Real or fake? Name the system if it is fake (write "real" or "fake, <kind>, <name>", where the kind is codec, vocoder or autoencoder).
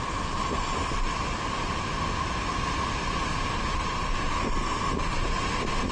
real